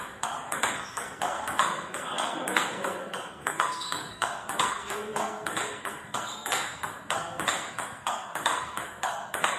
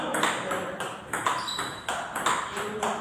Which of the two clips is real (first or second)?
second